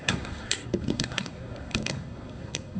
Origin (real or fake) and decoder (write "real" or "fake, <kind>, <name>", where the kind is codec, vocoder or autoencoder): fake, codec, SNAC